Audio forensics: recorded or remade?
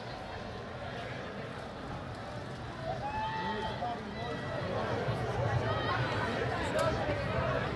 recorded